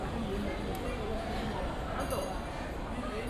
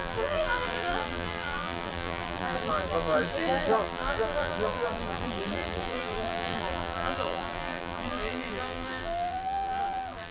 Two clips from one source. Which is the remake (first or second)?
second